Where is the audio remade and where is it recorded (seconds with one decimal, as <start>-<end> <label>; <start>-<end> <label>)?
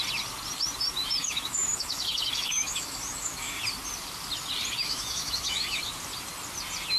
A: 0.0-1.2 recorded; 1.2-3.6 remade; 3.6-4.8 recorded; 4.8-5.8 remade; 5.8-7.0 recorded